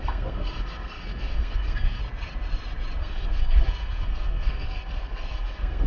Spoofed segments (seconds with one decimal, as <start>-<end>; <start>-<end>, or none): 0.0-2.0; 3.0-5.9